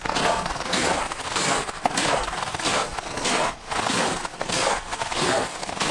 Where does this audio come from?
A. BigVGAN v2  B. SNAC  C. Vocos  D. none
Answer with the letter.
B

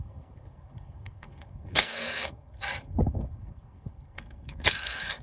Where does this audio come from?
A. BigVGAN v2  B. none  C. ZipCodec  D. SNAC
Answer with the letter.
D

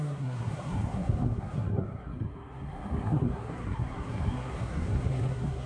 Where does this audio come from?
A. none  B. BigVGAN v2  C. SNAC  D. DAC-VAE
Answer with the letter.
C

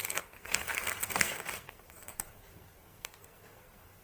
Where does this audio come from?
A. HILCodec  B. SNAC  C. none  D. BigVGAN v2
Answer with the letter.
B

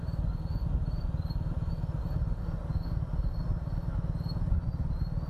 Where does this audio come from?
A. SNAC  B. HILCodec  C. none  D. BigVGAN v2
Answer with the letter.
C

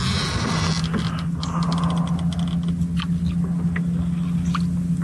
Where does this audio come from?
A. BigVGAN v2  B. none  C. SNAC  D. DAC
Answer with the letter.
B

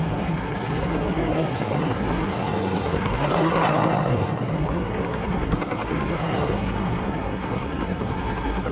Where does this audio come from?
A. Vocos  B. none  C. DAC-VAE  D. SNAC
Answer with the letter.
D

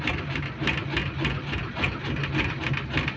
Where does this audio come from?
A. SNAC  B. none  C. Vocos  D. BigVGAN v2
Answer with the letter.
B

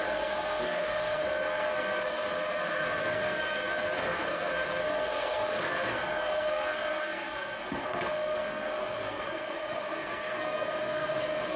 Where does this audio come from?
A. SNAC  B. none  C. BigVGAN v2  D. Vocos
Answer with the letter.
A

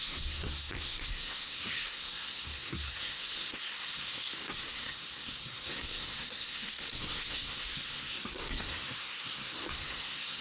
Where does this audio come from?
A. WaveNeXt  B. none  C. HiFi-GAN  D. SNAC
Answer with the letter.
D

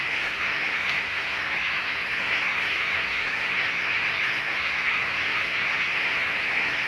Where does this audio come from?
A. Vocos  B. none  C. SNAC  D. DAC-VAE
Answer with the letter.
C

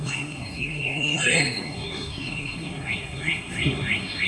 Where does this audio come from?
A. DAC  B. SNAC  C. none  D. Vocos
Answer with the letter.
B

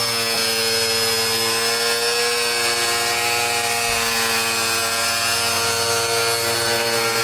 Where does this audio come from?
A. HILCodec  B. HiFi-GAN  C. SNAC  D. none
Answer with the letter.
D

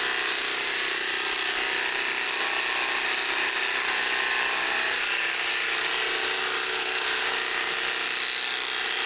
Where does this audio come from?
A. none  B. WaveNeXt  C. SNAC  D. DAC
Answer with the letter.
A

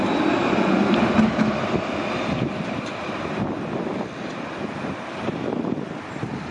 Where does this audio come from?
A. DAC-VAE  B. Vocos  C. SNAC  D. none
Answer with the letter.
D